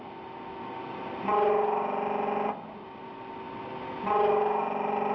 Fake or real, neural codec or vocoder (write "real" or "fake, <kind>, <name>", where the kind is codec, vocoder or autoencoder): real